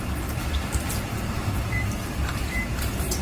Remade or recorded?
remade